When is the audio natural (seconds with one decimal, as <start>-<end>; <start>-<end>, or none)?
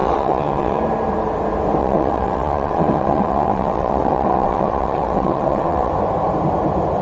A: 0.8-1.8; 5.9-7.0